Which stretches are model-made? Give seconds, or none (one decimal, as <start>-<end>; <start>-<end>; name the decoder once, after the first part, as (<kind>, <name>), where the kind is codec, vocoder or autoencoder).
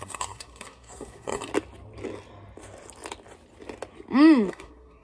0.0-1.5 (codec, SNAC); 4.5-5.0